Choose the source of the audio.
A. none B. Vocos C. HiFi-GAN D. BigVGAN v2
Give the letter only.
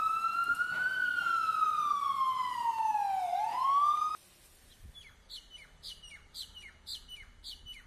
A